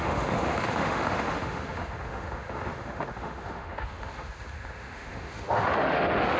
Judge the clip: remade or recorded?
remade